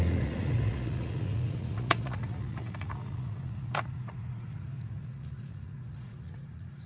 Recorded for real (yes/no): no